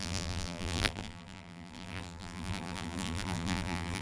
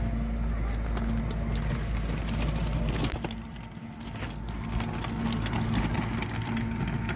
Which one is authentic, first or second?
second